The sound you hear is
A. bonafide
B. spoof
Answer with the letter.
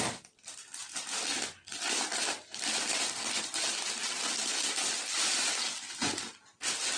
A